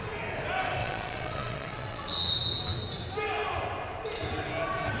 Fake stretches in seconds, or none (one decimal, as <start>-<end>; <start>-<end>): 0.8-2.3